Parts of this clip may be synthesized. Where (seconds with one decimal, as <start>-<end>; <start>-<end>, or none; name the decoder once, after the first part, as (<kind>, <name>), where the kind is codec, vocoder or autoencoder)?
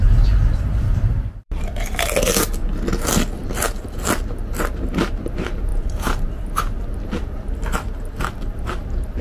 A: 0.0-2.1 (vocoder, BigVGAN v2); 5.7-6.6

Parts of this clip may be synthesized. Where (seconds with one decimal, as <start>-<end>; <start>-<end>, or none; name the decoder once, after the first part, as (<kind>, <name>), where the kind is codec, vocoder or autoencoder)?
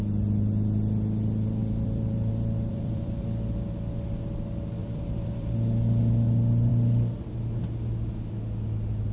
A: 1.6-2.3 (vocoder, BigVGAN v2); 2.7-3.7; 4.8-5.5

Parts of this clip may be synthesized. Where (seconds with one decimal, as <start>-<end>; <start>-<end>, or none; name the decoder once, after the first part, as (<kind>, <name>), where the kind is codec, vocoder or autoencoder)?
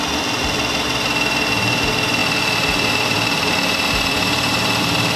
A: 0.0-5.2 (vocoder, BigVGAN v2)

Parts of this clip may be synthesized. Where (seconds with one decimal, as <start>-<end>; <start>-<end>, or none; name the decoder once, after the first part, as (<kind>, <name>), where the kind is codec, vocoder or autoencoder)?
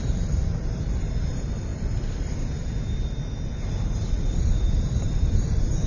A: 0.0-1.7 (vocoder, BigVGAN v2); 3.6-5.9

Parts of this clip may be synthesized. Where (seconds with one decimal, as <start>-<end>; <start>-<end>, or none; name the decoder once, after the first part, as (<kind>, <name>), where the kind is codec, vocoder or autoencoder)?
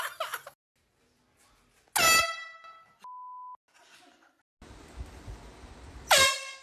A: none